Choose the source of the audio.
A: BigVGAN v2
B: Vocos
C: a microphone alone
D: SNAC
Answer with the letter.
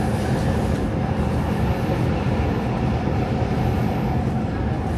C